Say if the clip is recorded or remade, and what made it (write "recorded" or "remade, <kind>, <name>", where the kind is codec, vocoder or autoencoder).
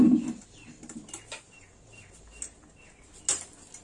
recorded